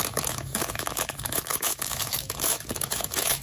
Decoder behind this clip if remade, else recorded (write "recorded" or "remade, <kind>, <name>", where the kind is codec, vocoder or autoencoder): remade, autoencoder, DAC-VAE